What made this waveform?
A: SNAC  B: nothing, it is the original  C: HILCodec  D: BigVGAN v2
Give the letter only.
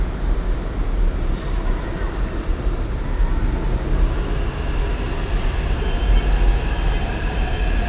B